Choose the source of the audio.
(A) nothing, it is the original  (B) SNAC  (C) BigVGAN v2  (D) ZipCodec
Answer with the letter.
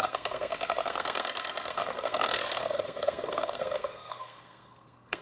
B